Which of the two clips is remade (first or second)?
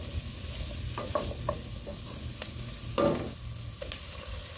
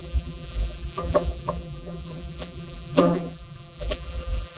second